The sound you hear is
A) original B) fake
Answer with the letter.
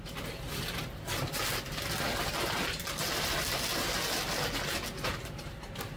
A